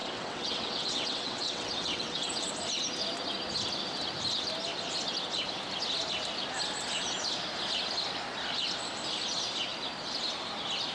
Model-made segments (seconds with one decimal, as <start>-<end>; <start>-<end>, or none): 0.0-2.5